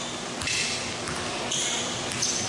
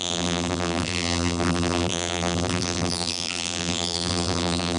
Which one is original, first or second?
first